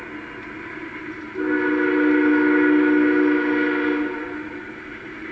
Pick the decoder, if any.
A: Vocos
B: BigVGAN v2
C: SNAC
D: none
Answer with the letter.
D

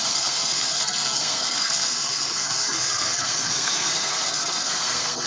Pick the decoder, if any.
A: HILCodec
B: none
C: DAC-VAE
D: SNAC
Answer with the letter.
D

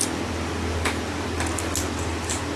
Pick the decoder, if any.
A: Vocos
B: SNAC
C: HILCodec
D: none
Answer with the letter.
D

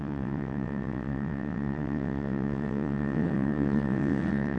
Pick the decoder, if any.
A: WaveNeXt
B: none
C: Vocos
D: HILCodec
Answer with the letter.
A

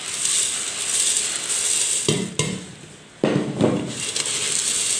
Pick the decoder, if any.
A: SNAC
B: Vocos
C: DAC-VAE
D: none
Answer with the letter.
D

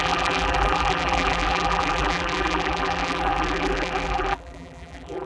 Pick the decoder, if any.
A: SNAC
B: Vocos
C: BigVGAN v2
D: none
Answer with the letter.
C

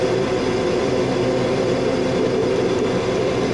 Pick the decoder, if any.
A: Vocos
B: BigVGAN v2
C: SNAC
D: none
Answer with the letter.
B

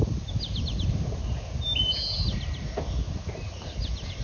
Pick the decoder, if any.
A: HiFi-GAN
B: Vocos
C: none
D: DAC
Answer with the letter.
C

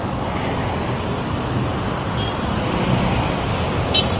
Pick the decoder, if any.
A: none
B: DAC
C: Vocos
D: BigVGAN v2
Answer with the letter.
A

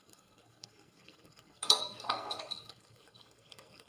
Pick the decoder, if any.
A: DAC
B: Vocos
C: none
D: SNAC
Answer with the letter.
D